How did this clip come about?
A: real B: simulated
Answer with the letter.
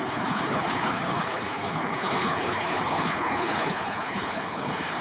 B